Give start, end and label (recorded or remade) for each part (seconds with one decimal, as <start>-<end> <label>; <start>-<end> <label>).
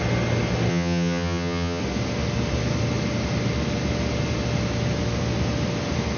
0.0-0.7 recorded; 0.7-1.8 remade; 1.8-6.2 recorded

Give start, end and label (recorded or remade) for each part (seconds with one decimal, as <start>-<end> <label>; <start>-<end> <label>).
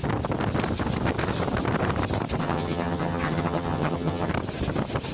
0.0-2.4 recorded; 2.4-4.3 remade; 4.3-5.1 recorded